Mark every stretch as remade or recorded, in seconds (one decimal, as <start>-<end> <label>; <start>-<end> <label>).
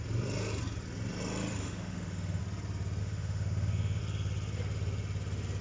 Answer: 0.0-1.6 recorded; 1.6-2.4 remade; 2.4-3.0 recorded; 3.0-4.0 remade; 4.0-5.6 recorded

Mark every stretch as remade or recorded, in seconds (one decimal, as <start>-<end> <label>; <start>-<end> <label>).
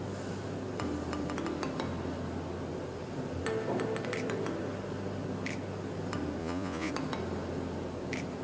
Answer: 0.0-6.4 recorded; 6.4-6.9 remade; 6.9-8.4 recorded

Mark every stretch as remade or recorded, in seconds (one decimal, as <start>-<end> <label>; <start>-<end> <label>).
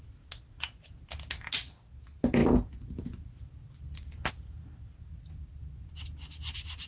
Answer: 0.0-6.9 recorded